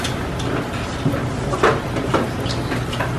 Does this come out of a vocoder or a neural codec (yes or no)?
no